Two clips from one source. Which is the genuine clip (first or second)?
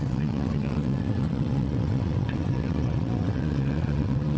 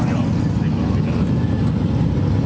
second